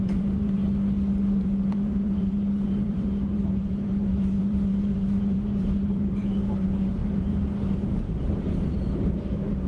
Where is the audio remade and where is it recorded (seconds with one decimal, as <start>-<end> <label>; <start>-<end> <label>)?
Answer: 0.0-0.6 remade; 0.6-1.4 recorded; 1.4-9.7 remade